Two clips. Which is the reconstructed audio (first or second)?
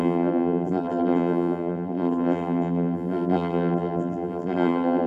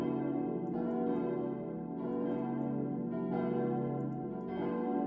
first